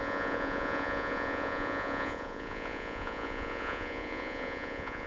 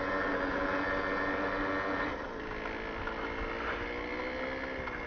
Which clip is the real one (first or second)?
second